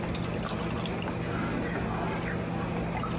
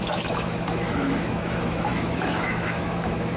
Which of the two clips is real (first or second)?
first